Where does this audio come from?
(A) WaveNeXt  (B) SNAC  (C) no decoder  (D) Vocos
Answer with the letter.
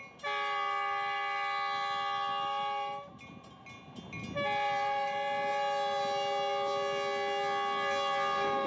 C